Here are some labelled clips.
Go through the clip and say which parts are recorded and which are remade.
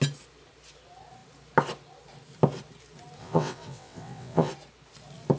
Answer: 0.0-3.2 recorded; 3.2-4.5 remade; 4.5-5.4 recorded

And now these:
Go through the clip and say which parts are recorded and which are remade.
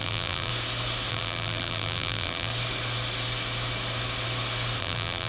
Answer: 0.0-0.5 remade; 0.5-1.1 recorded; 1.1-2.5 remade; 2.5-4.8 recorded; 4.8-5.3 remade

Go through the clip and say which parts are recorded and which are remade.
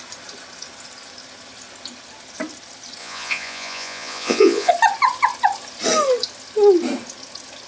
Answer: 0.0-3.0 recorded; 3.0-4.7 remade; 4.7-7.7 recorded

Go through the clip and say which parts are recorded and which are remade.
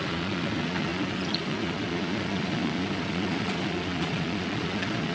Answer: 0.0-5.1 remade